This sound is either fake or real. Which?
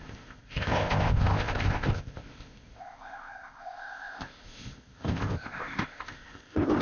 fake